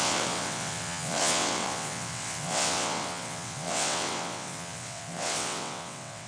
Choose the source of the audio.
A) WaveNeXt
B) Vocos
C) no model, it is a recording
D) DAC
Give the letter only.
A